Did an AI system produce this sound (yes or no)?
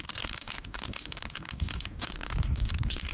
yes